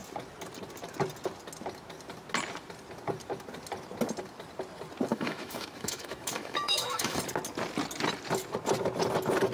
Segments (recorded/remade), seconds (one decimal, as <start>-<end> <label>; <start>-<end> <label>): 0.0-5.1 recorded; 5.1-7.2 remade; 7.2-9.5 recorded